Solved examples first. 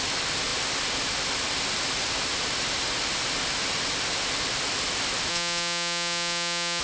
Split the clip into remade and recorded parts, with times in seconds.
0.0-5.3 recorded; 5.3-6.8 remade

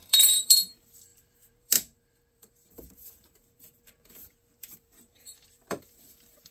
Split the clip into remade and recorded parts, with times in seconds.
0.0-6.5 remade

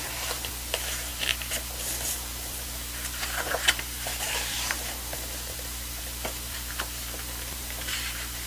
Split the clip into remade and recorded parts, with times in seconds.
0.0-8.5 remade

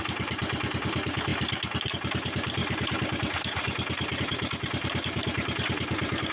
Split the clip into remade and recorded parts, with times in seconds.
0.0-1.3 remade; 1.3-1.9 recorded; 1.9-6.3 remade

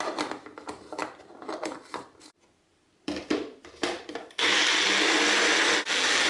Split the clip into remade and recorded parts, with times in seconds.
0.0-1.0 recorded; 1.0-4.6 remade; 4.6-6.3 recorded